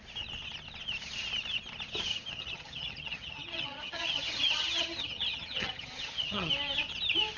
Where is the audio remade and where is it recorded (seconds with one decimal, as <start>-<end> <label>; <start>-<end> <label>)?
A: 0.0-2.1 recorded; 2.1-6.5 remade; 6.5-7.4 recorded